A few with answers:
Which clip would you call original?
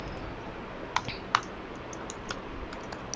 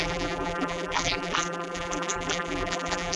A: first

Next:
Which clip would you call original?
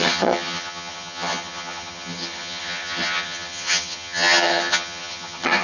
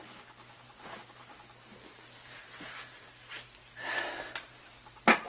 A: second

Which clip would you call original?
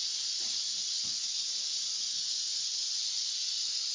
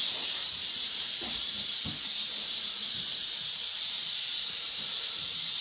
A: first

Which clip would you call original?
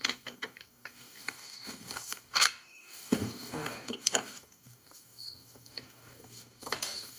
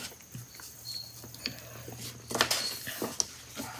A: second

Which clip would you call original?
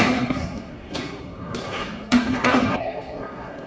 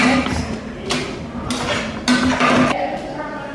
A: second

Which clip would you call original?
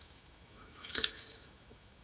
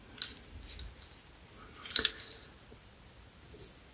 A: second